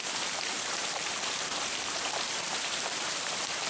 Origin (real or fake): fake